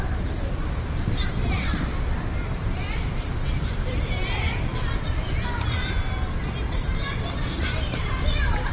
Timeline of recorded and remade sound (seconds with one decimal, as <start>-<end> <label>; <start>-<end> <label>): 0.0-1.2 remade; 1.2-1.8 recorded; 1.8-4.7 remade; 4.7-6.7 recorded; 6.7-8.7 remade